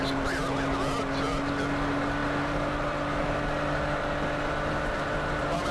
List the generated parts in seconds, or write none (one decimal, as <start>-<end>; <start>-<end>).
none